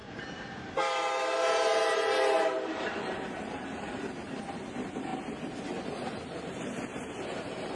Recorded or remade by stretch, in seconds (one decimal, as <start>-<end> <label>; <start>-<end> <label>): 0.0-4.0 remade; 4.0-6.9 recorded; 6.9-7.8 remade